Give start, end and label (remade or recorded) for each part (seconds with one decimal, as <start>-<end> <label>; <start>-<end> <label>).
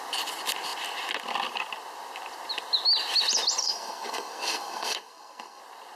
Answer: 0.0-3.6 recorded; 3.6-5.6 remade; 5.6-6.0 recorded